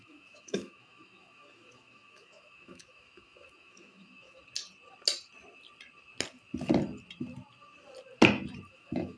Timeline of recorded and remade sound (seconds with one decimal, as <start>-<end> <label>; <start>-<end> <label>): 0.0-4.4 remade; 4.4-8.7 recorded; 8.7-9.2 remade